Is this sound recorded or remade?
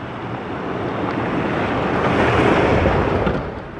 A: recorded